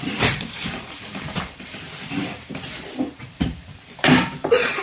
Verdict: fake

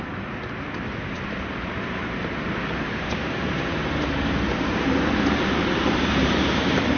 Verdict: fake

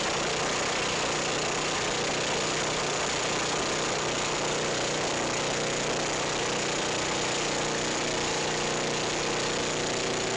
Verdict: real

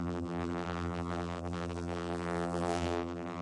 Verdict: fake